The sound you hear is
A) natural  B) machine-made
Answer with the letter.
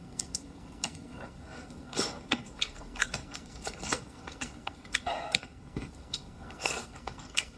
B